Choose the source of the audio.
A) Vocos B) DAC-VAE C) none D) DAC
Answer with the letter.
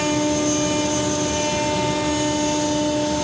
C